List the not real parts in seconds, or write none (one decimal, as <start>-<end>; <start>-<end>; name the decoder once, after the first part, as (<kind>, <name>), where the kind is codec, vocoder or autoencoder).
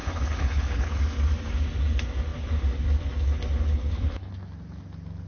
0.0-1.0 (codec, HILCodec); 3.7-4.3